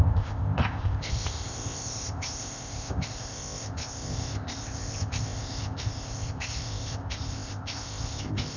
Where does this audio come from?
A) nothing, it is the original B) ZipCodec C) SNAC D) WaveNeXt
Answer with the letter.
B